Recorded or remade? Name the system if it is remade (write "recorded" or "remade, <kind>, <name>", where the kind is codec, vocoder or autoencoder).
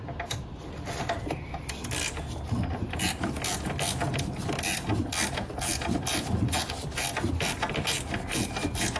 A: recorded